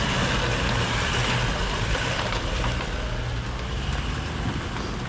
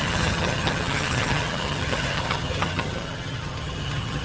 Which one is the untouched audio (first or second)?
first